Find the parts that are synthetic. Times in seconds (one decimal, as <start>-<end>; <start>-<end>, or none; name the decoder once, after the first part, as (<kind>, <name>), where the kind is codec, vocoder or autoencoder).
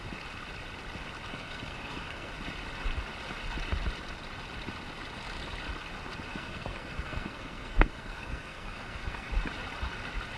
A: 1.3-2.3 (codec, SNAC); 6.3-9.3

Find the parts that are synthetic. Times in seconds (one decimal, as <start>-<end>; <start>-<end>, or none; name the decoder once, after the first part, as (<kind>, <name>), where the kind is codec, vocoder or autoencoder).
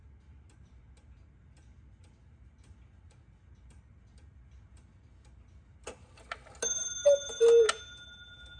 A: none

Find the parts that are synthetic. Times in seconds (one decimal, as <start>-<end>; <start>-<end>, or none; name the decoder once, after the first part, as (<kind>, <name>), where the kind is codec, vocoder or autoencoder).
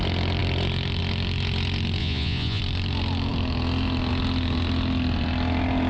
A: 2.0-2.6 (vocoder, Vocos)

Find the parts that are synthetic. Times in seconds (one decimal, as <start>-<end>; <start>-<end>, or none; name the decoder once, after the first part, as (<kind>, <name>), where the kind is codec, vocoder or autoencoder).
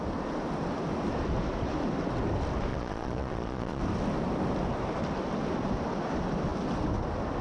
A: 2.7-3.8 (vocoder, Vocos)